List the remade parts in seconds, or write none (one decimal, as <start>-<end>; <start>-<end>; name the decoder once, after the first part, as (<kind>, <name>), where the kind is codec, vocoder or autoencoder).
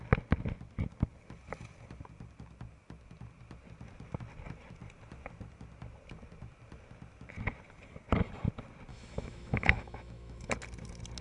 8.9-10.5 (autoencoder, DAC-VAE)